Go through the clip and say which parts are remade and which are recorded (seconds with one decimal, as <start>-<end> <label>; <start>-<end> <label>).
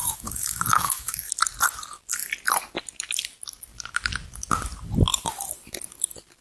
0.0-1.3 remade; 1.3-6.4 recorded